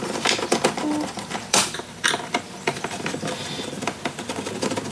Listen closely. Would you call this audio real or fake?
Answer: fake